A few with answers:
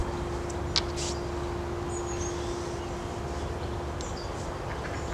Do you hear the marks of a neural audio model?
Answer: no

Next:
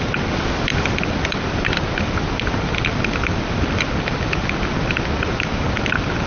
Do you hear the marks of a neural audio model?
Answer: no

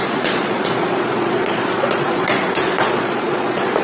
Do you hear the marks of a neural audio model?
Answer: yes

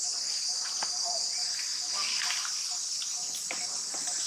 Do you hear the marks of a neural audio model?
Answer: no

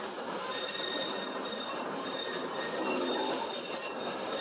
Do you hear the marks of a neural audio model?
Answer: no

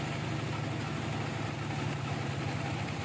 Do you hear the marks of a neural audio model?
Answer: no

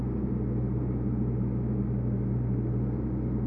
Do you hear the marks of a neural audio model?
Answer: no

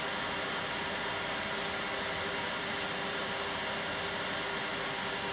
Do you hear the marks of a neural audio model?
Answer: no